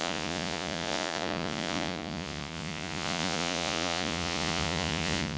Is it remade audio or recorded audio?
remade